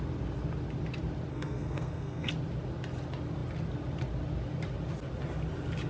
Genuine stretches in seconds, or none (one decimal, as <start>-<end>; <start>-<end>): 0.0-1.3; 2.3-5.9